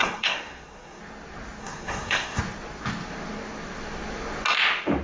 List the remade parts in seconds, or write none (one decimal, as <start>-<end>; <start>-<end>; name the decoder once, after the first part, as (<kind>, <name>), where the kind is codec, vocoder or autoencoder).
0.0-1.0 (codec, SNAC); 1.6-2.4